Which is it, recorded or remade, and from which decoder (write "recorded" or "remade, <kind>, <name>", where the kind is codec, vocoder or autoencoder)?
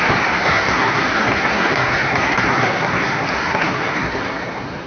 remade, codec, SNAC